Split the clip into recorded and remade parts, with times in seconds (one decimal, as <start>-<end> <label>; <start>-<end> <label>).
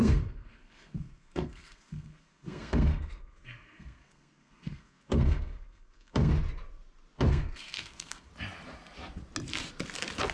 0.0-6.3 remade; 6.3-7.3 recorded; 7.3-8.3 remade; 8.3-10.3 recorded